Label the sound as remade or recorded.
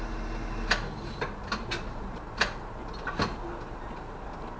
recorded